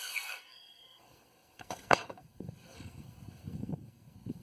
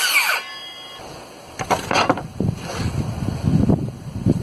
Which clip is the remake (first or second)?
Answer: first